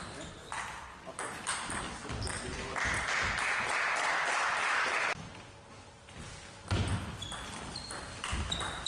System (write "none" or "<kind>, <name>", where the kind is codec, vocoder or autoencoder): none